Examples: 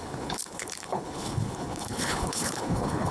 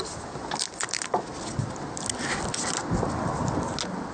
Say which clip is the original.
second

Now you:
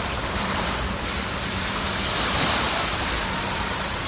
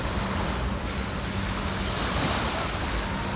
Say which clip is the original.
second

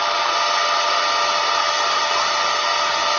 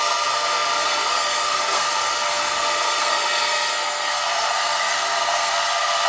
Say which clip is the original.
first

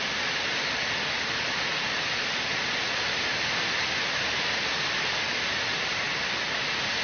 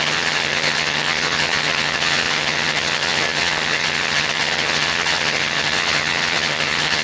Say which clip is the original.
first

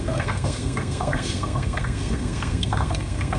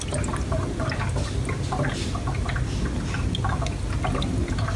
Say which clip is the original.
second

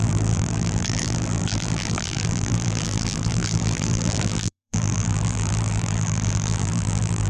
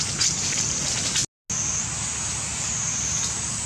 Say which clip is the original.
second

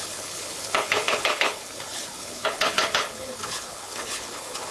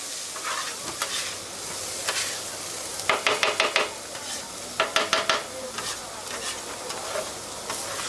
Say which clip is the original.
second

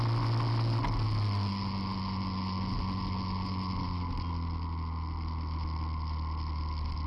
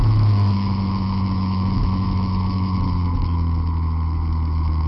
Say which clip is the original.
first